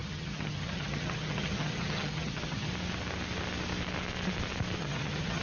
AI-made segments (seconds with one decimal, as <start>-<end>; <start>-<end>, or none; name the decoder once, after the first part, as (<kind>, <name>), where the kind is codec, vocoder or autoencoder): 0.0-2.7 (vocoder, HiFi-GAN); 4.8-5.4